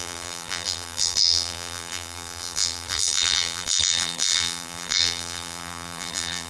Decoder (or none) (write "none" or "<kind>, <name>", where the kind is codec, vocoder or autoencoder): vocoder, BigVGAN v2